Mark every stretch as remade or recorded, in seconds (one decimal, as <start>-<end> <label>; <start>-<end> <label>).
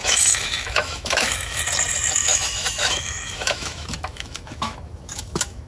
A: 0.0-1.6 remade; 1.6-2.2 recorded; 2.2-5.7 remade